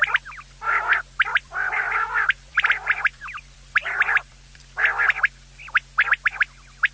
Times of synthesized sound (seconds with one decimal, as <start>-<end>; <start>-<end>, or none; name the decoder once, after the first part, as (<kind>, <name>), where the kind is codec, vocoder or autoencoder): 1.3-4.6 (vocoder, BigVGAN v2)